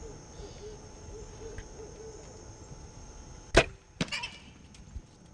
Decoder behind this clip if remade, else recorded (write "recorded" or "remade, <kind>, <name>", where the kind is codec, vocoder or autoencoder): recorded